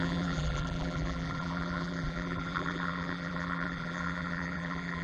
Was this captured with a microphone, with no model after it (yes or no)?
no